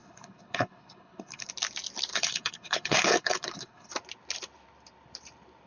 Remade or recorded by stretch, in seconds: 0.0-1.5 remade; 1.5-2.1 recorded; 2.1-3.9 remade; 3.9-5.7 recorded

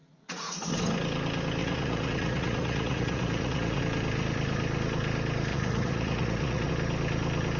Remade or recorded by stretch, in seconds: 0.0-0.7 remade; 0.7-1.6 recorded; 1.6-3.8 remade; 3.8-5.5 recorded; 5.5-6.7 remade; 6.7-7.6 recorded

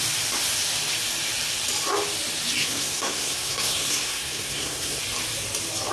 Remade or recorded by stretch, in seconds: 0.0-2.6 recorded; 2.6-5.0 remade; 5.0-5.9 recorded

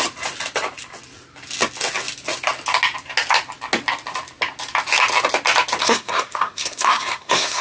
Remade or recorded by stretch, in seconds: 0.0-5.8 recorded; 5.8-7.6 remade

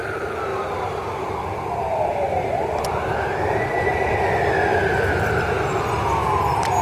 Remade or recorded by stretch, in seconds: 0.0-0.5 recorded; 0.5-3.6 remade; 3.6-4.7 recorded; 4.7-6.1 remade; 6.1-6.8 recorded

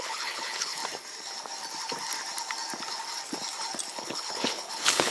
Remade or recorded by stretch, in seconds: 0.0-0.8 remade; 0.8-3.9 recorded; 3.9-5.1 remade